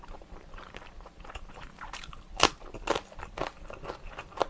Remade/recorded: recorded